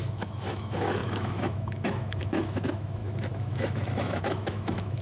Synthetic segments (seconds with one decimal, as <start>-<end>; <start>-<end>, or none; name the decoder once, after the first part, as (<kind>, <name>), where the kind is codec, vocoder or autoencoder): 0.0-5.0 (autoencoder, DAC-VAE)